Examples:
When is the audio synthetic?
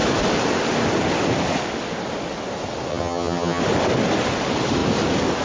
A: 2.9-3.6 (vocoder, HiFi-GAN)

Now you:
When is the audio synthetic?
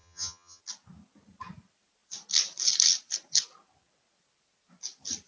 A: 0.0-0.6 (vocoder, HiFi-GAN)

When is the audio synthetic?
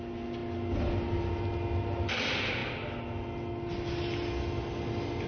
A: none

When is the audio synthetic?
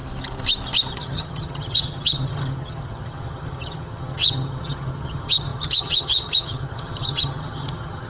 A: 0.9-8.1 (vocoder, HiFi-GAN)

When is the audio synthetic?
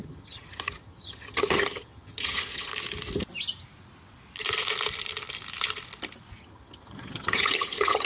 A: 0.0-2.7 (vocoder, HiFi-GAN); 6.4-8.1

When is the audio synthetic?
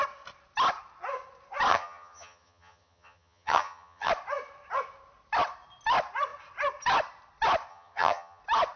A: 1.7-4.1 (vocoder, HiFi-GAN); 7.7-8.4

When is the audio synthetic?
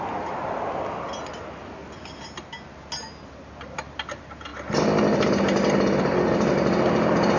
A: none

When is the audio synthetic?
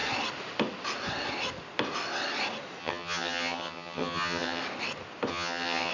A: 2.8-4.6 (vocoder, HiFi-GAN); 5.3-5.9